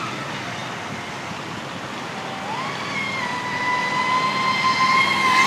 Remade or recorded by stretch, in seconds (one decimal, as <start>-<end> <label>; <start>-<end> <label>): 0.0-5.5 recorded